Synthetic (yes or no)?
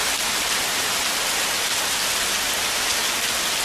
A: no